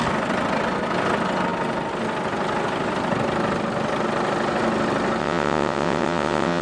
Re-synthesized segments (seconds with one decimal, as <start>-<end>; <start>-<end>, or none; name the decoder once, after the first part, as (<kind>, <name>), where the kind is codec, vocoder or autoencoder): 5.2-6.6 (vocoder, WaveNeXt)